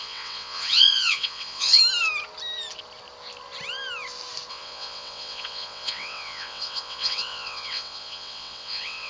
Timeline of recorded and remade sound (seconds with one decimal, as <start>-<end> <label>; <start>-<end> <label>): 0.0-1.8 remade; 1.8-4.5 recorded; 4.5-9.1 remade